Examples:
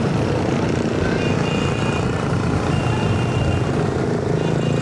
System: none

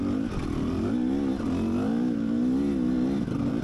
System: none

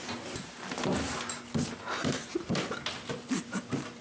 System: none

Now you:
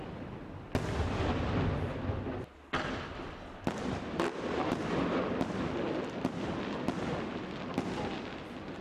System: none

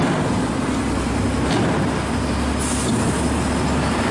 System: none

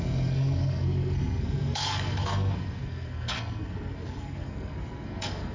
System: codec, SNAC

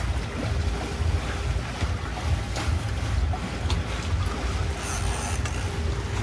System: none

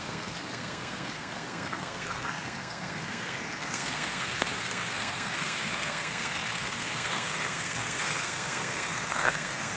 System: codec, SNAC